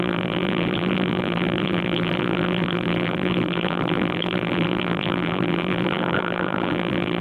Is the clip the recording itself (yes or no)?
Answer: no